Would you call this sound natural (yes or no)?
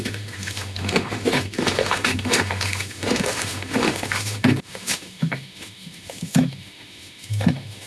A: no